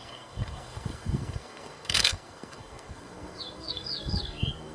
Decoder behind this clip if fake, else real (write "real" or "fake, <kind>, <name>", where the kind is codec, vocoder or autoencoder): fake, codec, SNAC